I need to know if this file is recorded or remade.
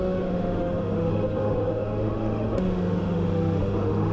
remade